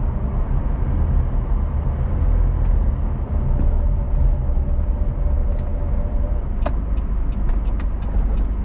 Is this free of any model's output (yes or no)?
yes